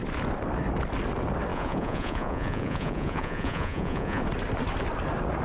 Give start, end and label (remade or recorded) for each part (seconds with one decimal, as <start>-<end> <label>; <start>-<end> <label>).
0.0-1.5 recorded; 1.5-4.2 remade; 4.2-5.4 recorded